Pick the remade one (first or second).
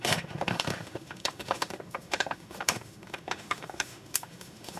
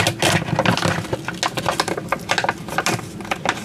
first